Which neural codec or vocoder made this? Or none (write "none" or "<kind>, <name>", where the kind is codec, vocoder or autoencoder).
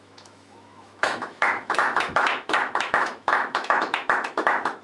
autoencoder, DAC-VAE